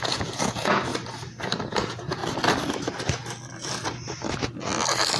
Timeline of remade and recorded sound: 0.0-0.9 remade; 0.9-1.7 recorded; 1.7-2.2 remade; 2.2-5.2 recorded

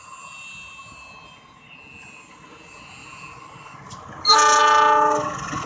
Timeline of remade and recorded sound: 0.0-5.7 recorded

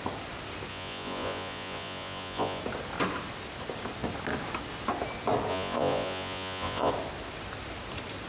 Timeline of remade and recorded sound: 0.0-0.7 recorded; 0.7-2.6 remade; 2.6-5.5 recorded; 5.5-6.9 remade; 6.9-8.3 recorded

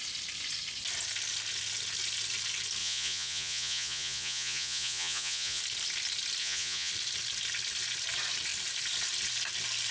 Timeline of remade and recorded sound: 0.0-2.8 recorded; 2.8-5.6 remade; 5.6-6.4 recorded; 6.4-6.9 remade; 6.9-9.9 recorded

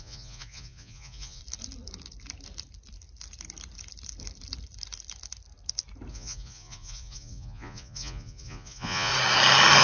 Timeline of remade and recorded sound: 0.0-1.4 remade; 1.4-6.1 recorded; 6.1-9.1 remade; 9.1-9.8 recorded

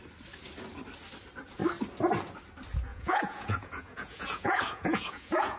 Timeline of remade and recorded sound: 0.0-2.9 recorded; 2.9-5.6 remade

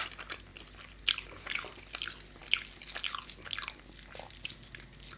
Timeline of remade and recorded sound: 0.0-5.2 recorded

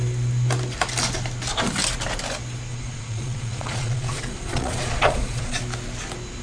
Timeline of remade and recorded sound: 0.0-2.7 recorded; 2.7-5.6 remade; 5.6-6.4 recorded